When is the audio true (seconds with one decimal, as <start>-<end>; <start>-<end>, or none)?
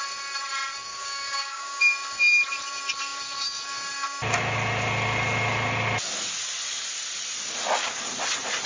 0.0-0.9; 1.8-8.7